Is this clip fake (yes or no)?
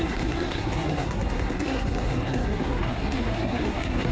yes